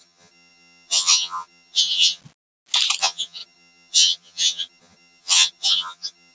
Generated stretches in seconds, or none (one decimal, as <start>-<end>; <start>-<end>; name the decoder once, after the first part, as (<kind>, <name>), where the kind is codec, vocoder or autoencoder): 0.0-2.2 (vocoder, HiFi-GAN); 3.0-6.3